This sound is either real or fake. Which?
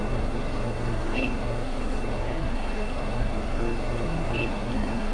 fake